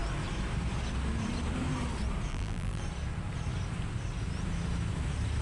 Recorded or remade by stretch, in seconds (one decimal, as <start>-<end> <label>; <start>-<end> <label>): 0.0-2.3 recorded; 2.3-2.8 remade; 2.8-5.4 recorded